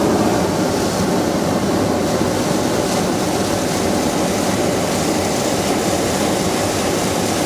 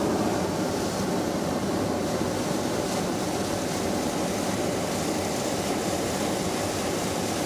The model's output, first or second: second